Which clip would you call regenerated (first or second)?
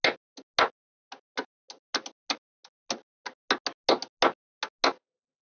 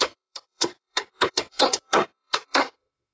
second